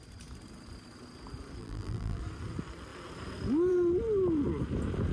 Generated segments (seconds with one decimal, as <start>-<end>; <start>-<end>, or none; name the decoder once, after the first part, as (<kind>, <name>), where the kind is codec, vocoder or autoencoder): 1.6-2.2 (vocoder, BigVGAN v2)